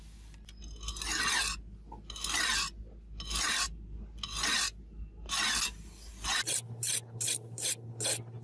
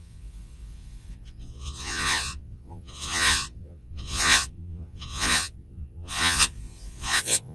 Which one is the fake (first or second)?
second